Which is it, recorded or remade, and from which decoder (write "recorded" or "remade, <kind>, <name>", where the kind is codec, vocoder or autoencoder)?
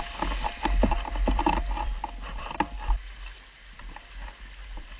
recorded